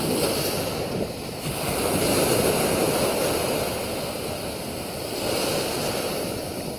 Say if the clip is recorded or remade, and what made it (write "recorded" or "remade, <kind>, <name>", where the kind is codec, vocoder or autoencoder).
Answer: recorded